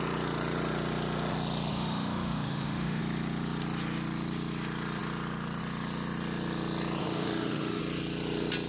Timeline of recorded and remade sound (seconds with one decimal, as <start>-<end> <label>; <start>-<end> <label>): 0.0-1.7 recorded; 1.7-3.0 remade; 3.0-7.0 recorded; 7.0-7.8 remade; 7.8-8.7 recorded